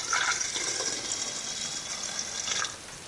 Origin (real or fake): real